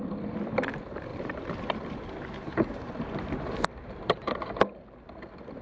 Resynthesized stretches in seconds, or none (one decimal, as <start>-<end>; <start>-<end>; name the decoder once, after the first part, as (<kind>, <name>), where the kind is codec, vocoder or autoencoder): 1.1-4.5 (vocoder, BigVGAN v2)